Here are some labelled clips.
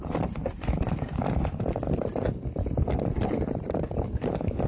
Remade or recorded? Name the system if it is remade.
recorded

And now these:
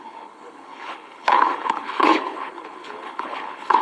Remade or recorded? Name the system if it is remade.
remade, codec, HILCodec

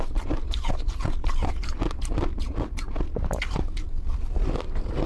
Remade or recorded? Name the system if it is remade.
recorded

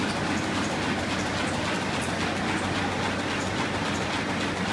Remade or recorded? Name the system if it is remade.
recorded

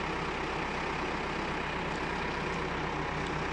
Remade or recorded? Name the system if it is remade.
recorded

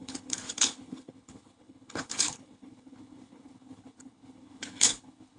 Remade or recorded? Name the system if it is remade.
remade, codec, HILCodec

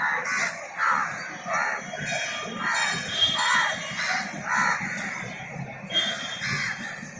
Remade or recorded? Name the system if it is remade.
recorded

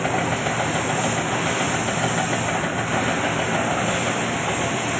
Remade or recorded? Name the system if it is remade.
recorded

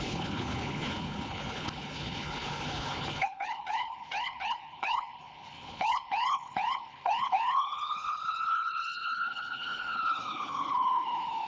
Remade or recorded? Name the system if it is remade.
remade, codec, HILCodec